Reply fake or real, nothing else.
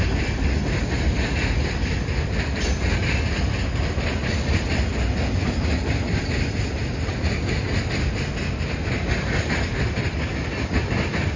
real